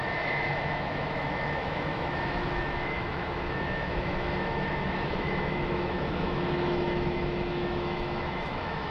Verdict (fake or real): fake